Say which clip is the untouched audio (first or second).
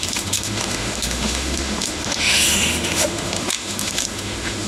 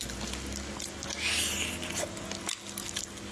second